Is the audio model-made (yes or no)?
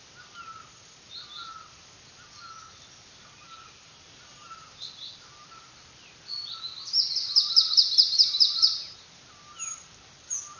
no